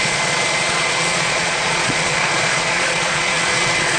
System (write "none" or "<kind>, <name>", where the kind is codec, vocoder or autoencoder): vocoder, Vocos